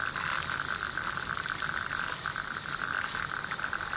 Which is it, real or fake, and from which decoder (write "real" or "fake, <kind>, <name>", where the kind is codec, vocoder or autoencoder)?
real